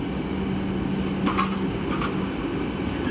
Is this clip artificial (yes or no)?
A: no